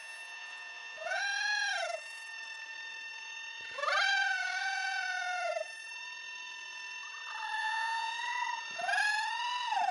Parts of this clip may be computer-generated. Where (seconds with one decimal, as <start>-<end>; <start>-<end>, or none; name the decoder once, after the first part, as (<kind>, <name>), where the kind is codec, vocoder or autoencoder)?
0.0-1.2 (vocoder, Vocos); 7.6-8.1